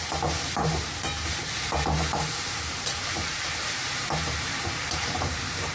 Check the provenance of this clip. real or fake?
fake